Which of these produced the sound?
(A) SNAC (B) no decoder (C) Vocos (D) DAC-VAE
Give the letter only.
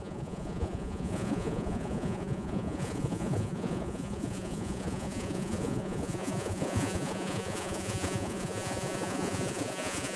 C